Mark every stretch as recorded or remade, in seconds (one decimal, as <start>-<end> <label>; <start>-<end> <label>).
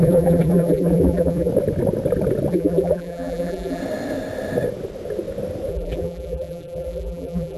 0.0-1.5 remade; 1.5-2.5 recorded; 2.5-3.8 remade; 3.8-5.7 recorded; 5.7-7.6 remade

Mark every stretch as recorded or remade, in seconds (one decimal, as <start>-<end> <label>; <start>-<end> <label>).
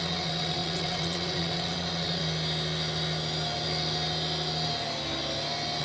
0.0-2.2 remade; 2.2-5.8 recorded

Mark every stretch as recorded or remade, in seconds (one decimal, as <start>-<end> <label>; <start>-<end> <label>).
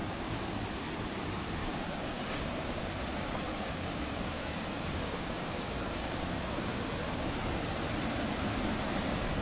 0.0-0.6 remade; 0.6-1.6 recorded; 1.6-2.8 remade; 2.8-3.5 recorded; 3.5-6.9 remade; 6.9-9.4 recorded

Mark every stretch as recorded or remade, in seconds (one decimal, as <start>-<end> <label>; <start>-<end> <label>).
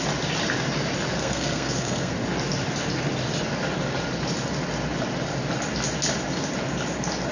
0.0-1.2 recorded; 1.2-2.1 remade; 2.1-7.3 recorded